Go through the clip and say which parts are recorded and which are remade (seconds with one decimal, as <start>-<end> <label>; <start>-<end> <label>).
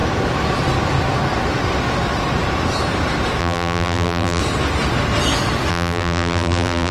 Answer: 0.0-3.4 recorded; 3.4-4.4 remade; 4.4-5.7 recorded; 5.7-6.9 remade